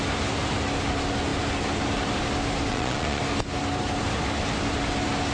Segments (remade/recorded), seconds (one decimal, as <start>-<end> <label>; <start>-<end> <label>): 0.0-2.7 recorded; 2.7-3.2 remade; 3.2-5.3 recorded